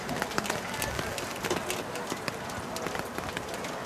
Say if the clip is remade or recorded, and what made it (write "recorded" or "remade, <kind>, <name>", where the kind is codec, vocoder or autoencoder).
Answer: recorded